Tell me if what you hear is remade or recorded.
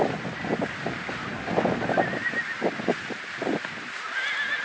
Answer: recorded